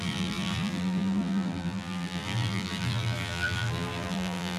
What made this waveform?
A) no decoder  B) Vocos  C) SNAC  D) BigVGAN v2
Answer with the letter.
D